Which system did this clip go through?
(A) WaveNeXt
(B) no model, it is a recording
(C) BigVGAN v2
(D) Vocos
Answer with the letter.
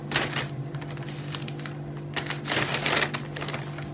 B